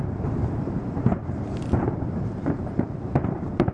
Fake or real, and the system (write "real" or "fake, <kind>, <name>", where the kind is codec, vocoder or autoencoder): fake, vocoder, BigVGAN v2